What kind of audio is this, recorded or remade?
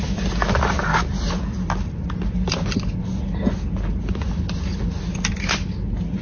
recorded